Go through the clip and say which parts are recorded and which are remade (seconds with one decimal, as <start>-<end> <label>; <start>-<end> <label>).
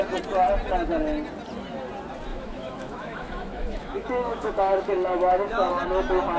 0.0-2.3 recorded; 2.3-5.7 remade; 5.7-6.4 recorded